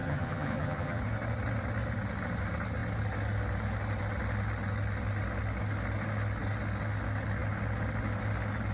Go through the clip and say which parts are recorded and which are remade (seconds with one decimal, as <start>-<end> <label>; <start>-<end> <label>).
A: 0.0-1.0 remade; 1.0-8.7 recorded